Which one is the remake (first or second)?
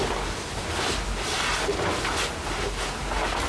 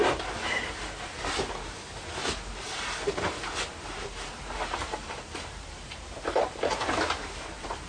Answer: second